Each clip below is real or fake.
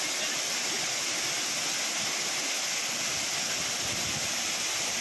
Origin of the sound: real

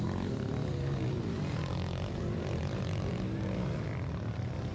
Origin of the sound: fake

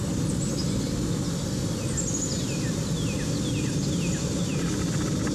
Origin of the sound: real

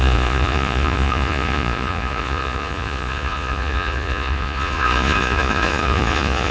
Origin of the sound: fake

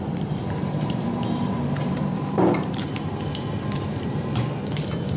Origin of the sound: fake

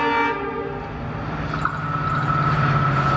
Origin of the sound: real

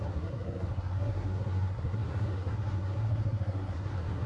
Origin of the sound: fake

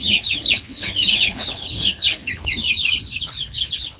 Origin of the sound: fake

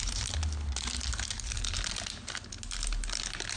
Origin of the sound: real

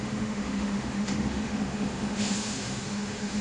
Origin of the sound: fake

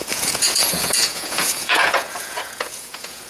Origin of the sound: fake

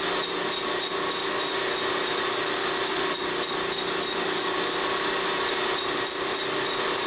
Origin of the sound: real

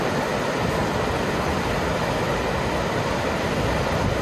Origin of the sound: real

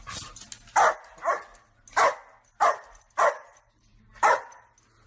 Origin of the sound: real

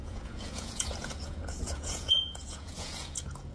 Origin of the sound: fake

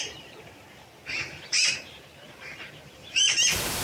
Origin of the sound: fake